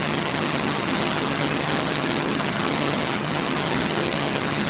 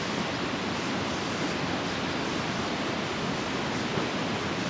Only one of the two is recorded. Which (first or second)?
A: second